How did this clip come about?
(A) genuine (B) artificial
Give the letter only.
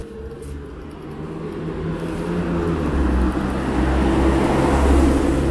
A